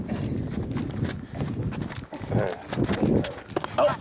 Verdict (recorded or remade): recorded